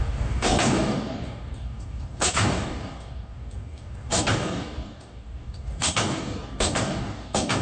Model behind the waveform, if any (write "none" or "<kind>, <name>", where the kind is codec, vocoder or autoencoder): codec, DAC